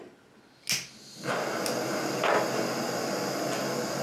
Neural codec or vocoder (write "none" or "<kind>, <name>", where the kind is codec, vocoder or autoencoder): none